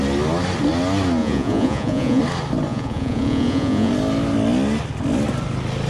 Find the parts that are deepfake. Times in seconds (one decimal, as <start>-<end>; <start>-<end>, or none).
1.2-2.2; 2.7-3.9